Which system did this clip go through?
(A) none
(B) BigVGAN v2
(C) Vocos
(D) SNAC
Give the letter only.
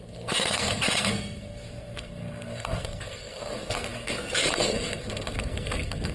D